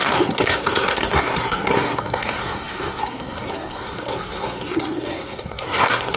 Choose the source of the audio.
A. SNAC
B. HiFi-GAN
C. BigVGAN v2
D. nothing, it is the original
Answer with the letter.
A